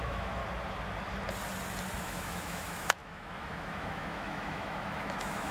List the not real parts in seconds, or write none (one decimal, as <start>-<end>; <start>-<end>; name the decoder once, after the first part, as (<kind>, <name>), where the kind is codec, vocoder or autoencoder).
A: 0.0-0.4 (autoencoder, DAC-VAE); 2.0-5.5